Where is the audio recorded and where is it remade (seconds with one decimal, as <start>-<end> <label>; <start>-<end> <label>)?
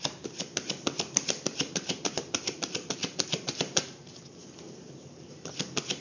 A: 0.0-1.5 recorded; 1.5-4.1 remade; 4.1-6.0 recorded